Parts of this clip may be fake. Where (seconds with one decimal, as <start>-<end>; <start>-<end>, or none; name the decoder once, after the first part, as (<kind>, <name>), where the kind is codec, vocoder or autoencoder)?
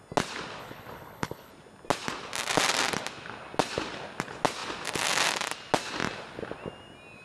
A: 0.6-1.5 (codec, HILCodec)